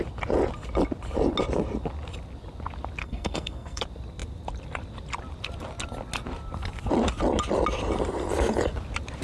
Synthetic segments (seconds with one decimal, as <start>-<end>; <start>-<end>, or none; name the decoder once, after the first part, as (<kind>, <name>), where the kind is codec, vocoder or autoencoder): 3.0-3.8 (codec, SNAC)

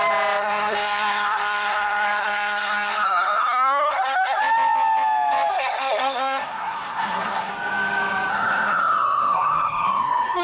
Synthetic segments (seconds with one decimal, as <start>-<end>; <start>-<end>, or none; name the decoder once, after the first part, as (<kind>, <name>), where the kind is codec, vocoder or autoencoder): 0.4-4.4 (codec, SNAC); 5.5-7.5; 8.3-10.4

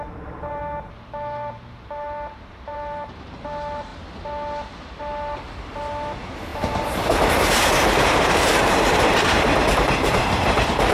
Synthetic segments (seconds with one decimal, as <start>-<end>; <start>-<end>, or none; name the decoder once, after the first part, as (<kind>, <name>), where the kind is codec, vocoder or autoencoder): 0.0-3.9 (vocoder, BigVGAN v2); 5.0-10.9

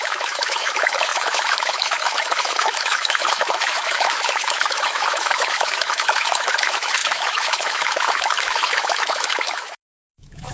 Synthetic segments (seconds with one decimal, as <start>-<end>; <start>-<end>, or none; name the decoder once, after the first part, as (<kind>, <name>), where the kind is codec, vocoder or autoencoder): 0.0-10.5 (autoencoder, DAC-VAE)